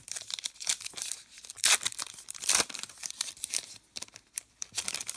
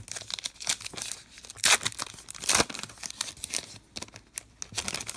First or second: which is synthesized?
first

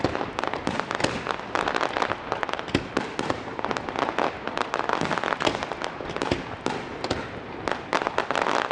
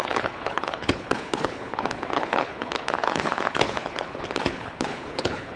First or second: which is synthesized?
second